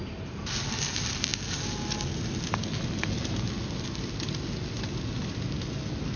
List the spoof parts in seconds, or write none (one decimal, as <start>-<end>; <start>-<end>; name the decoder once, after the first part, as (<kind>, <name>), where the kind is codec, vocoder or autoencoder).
none